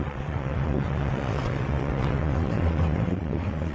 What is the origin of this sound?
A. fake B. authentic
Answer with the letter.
A